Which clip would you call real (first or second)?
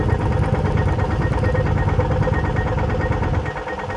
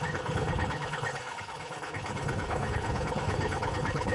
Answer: first